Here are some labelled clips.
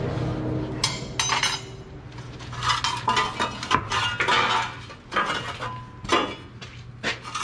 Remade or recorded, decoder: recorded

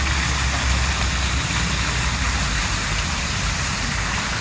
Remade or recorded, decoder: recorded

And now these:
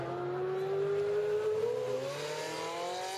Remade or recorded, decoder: recorded